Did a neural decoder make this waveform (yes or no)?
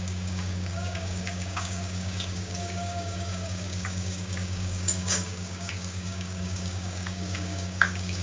yes